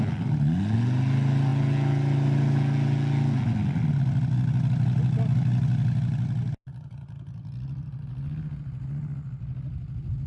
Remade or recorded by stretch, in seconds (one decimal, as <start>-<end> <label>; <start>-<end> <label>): 0.0-10.3 recorded